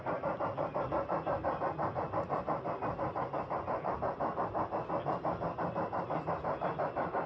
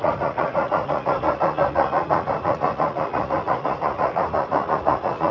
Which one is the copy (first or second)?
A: second